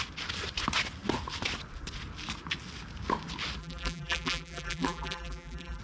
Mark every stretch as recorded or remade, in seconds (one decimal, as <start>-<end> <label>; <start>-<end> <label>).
0.0-3.6 recorded; 3.6-5.8 remade